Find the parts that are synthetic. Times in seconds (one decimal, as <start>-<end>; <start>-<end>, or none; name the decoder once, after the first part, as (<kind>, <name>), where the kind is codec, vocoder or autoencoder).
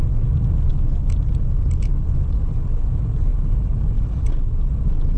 3.3-3.8 (vocoder, BigVGAN v2)